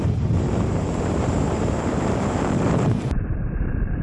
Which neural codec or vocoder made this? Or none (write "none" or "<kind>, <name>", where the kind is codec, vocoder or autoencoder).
vocoder, BigVGAN v2